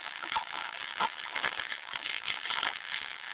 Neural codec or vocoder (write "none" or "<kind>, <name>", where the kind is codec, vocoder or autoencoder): vocoder, WaveNeXt